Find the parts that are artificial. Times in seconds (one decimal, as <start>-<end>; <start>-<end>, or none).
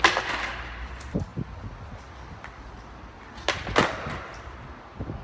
none